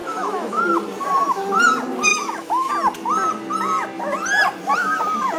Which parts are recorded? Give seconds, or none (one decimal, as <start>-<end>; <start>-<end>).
0.6-2.1; 2.7-5.4